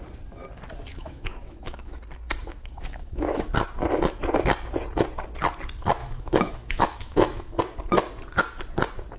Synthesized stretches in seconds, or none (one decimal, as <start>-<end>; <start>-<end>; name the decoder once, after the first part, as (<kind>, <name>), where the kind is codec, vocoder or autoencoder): 0.9-2.0 (autoencoder, DAC-VAE); 2.4-3.5; 6.0-7.6